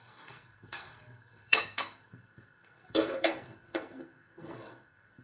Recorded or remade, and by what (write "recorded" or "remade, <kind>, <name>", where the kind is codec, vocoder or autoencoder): remade, codec, SNAC